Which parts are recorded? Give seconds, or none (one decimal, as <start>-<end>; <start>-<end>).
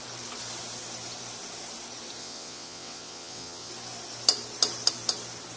0.0-2.2; 3.7-5.6